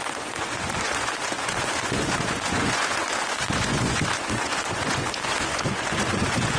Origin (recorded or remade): remade